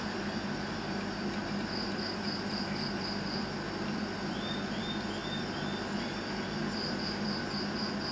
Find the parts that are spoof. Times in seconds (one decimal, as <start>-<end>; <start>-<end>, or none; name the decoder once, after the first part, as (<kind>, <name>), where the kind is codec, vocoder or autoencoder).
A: none